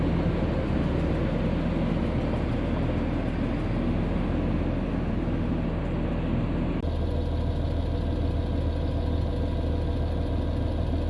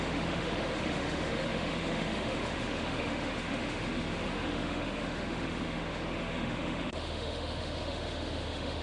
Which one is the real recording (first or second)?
first